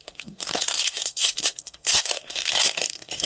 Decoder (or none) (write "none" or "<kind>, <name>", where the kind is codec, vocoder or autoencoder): codec, SNAC